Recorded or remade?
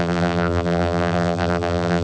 remade